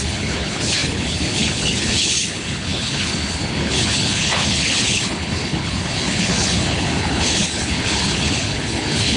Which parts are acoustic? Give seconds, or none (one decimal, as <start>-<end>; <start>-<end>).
none